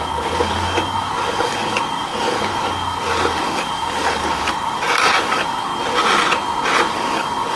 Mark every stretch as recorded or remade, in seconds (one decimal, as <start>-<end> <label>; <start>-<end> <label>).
0.0-5.7 remade; 5.7-6.9 recorded; 6.9-7.6 remade